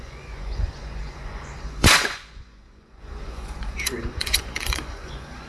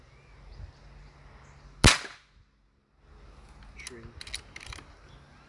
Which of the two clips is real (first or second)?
second